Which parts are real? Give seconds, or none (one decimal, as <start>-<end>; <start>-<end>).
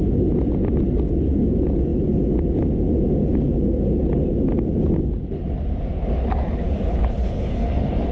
0.0-6.9